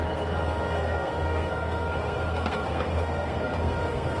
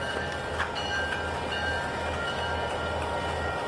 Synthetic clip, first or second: first